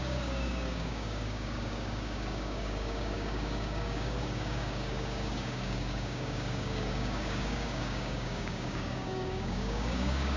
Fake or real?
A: fake